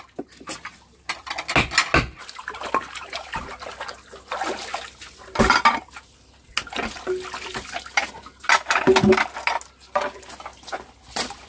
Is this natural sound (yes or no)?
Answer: yes